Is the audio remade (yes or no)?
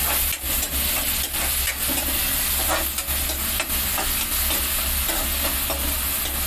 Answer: no